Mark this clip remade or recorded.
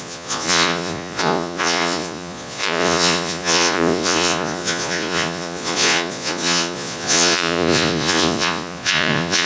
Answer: remade